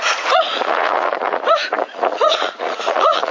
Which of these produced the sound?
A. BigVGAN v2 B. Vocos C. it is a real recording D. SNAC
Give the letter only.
B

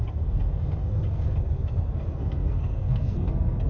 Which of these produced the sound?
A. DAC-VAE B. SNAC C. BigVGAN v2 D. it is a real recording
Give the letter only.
B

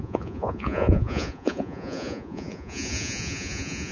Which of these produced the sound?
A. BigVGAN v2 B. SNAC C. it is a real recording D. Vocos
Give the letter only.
D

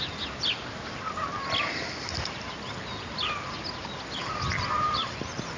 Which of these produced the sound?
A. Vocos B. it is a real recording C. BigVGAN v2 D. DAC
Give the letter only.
B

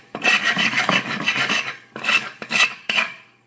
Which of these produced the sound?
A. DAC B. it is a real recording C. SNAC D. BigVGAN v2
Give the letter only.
A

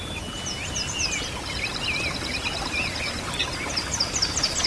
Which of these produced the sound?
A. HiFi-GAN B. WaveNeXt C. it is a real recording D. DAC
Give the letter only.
C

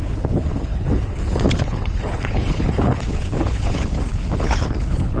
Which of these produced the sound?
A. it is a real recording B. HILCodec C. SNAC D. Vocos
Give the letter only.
B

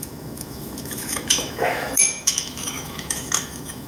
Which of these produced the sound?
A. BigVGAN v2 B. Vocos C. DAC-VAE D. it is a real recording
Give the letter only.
C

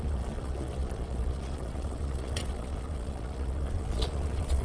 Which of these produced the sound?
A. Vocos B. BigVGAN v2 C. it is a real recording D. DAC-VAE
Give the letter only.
A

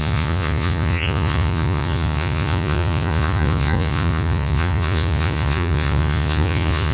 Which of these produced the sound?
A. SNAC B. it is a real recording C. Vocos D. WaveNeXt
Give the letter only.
C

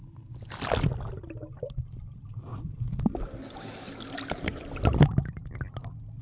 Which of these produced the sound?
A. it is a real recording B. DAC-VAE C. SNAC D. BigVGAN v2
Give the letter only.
A